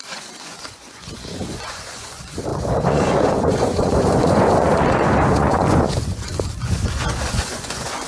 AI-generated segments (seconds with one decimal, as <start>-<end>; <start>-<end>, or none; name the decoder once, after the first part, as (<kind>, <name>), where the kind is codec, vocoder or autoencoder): 0.0-8.1 (vocoder, Vocos)